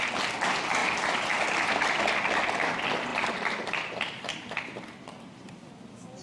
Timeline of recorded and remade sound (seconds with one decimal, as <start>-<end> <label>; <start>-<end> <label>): 0.0-0.8 recorded; 0.8-2.0 remade; 2.0-3.1 recorded; 3.1-5.7 remade; 5.7-6.2 recorded